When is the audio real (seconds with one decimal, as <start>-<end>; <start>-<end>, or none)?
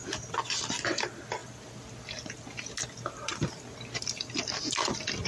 0.0-5.3